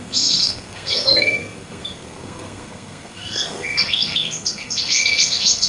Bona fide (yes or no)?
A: no